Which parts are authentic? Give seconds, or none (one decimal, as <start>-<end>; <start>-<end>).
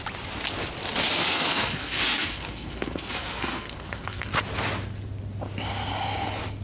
0.0-1.2; 4.3-6.6